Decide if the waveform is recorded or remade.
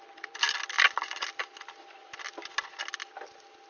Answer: recorded